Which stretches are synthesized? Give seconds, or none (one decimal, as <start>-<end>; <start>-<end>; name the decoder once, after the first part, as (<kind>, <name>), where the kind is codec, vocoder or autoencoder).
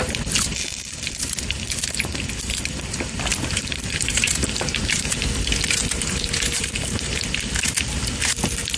3.3-5.1 (vocoder, BigVGAN v2); 5.8-7.2